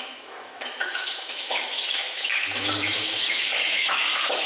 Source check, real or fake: fake